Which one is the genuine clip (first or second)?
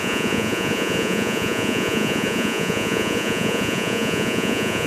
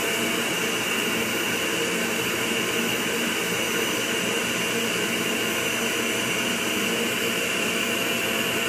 second